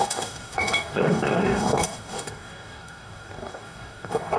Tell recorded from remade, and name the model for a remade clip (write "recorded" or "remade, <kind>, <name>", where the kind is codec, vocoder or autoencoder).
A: remade, codec, DAC